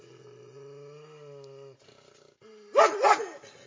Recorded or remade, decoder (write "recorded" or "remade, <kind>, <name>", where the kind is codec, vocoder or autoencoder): recorded